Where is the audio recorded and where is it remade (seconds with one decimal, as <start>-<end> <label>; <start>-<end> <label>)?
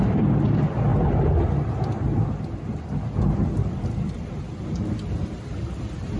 0.0-6.2 recorded